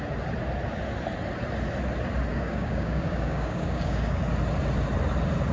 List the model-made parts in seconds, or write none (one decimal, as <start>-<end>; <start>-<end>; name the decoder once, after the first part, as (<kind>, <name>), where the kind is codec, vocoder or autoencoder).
2.3-4.2 (codec, DAC)